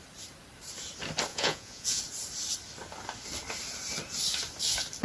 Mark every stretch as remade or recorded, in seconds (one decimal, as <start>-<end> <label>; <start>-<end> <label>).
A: 0.0-1.3 recorded; 1.3-2.0 remade; 2.0-5.0 recorded